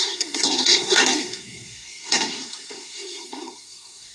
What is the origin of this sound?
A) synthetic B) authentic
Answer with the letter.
A